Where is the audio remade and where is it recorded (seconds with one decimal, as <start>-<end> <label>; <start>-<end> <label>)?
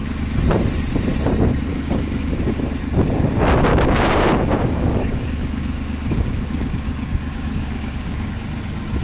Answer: 0.0-1.7 recorded; 1.7-2.6 remade; 2.6-3.7 recorded; 3.7-8.3 remade; 8.3-9.0 recorded